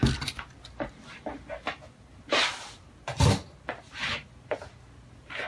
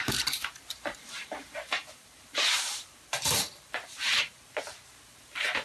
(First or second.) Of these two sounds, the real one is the first